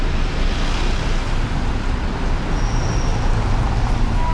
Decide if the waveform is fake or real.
real